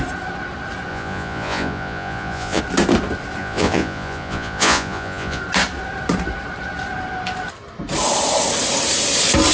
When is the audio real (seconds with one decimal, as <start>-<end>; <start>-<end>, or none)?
0.0-0.9; 2.6-3.4; 5.4-9.5